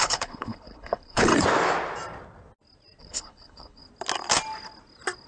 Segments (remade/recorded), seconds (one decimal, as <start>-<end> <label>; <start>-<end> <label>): 0.0-1.3 remade; 1.3-3.0 recorded; 3.0-3.8 remade; 3.8-5.3 recorded

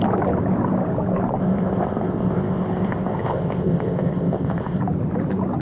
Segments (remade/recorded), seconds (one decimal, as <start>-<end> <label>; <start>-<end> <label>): 0.0-1.4 recorded; 1.4-4.8 remade; 4.8-5.6 recorded